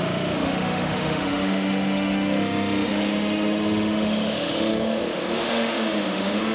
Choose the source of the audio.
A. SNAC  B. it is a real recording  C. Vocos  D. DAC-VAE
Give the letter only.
D